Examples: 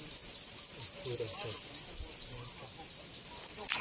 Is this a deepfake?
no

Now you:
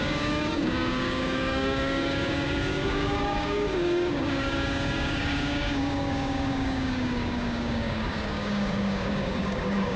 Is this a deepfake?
yes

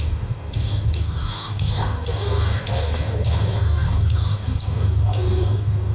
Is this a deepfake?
yes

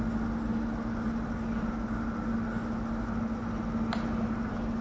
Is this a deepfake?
no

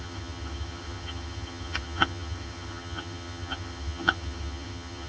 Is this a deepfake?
yes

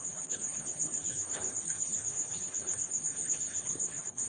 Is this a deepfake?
yes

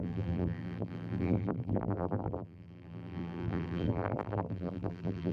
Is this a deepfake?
yes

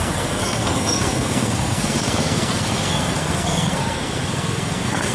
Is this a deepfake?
yes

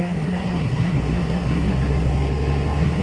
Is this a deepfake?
yes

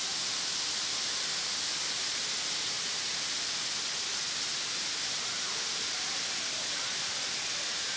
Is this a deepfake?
no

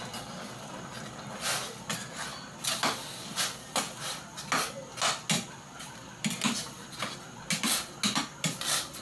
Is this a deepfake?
no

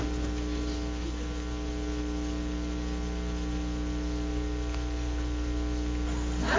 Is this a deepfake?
no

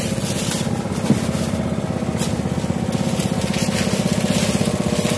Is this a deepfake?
no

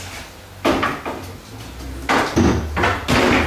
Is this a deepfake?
no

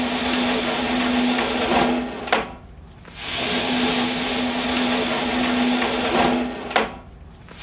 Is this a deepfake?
no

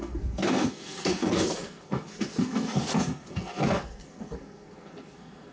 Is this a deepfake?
yes